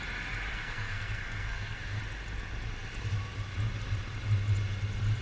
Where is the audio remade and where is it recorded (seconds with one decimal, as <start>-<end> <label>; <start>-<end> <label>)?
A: 0.0-0.5 recorded; 0.5-2.0 remade; 2.0-5.2 recorded